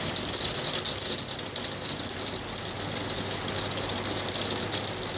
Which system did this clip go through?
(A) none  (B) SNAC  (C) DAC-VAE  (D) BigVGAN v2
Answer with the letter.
A